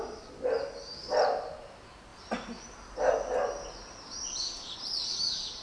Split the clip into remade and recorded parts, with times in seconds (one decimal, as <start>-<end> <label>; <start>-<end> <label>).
0.0-5.6 recorded